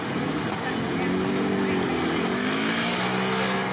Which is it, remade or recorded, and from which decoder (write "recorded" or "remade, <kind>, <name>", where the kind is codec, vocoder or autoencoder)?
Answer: recorded